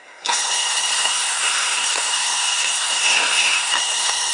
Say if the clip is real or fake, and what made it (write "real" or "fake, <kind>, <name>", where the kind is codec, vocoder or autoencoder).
fake, codec, SNAC